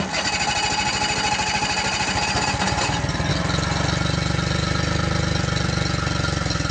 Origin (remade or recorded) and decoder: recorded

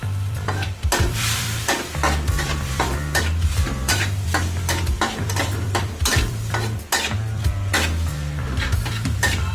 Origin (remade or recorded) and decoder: remade, vocoder, BigVGAN v2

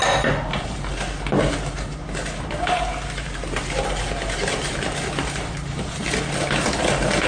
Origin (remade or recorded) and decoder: recorded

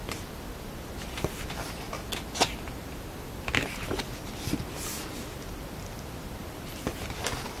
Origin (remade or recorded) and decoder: recorded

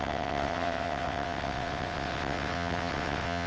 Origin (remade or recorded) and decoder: remade, vocoder, WaveNeXt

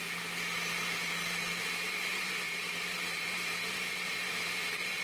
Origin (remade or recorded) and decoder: remade, vocoder, BigVGAN v2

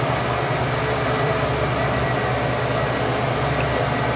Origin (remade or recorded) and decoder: recorded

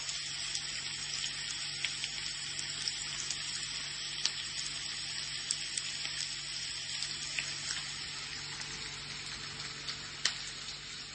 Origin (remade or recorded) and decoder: recorded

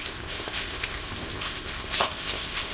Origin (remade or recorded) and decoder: remade, codec, ZipCodec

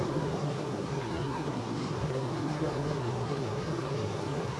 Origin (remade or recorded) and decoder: remade, codec, SNAC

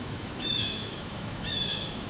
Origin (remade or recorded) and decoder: remade, autoencoder, DAC-VAE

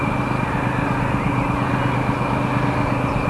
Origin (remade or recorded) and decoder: recorded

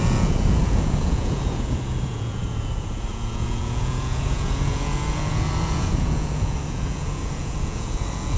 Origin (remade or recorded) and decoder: remade, vocoder, Vocos